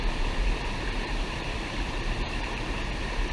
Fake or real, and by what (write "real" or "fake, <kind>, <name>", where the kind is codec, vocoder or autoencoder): fake, vocoder, BigVGAN v2